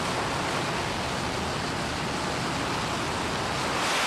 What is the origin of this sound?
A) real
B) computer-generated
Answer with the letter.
A